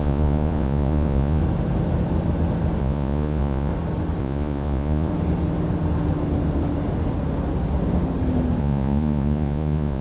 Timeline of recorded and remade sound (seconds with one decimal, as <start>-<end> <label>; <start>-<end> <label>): 0.0-1.4 remade; 1.4-2.8 recorded; 2.8-3.7 remade; 3.7-4.2 recorded; 4.2-5.1 remade; 5.1-8.6 recorded; 8.6-10.0 remade